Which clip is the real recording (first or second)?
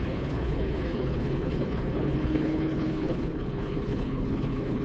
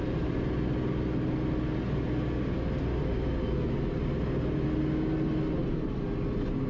second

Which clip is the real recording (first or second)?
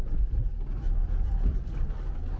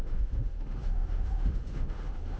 first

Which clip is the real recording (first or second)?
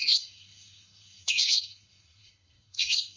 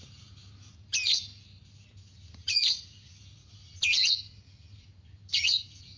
second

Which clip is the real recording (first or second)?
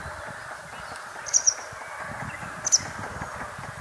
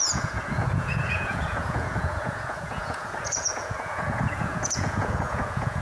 first